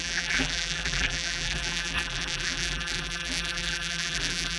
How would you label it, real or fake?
fake